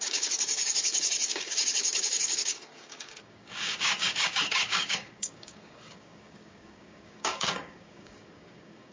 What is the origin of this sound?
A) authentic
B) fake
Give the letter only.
B